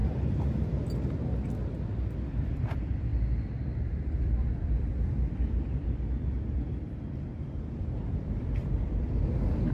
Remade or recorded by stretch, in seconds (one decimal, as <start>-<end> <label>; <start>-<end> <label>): 0.0-2.2 recorded; 2.2-3.1 remade; 3.1-3.8 recorded; 3.8-9.7 remade